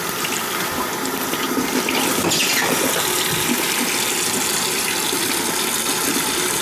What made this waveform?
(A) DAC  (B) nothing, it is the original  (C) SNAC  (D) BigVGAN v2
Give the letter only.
B